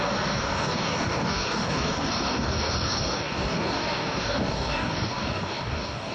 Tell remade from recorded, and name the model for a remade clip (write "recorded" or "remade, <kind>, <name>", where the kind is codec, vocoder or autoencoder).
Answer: remade, codec, DAC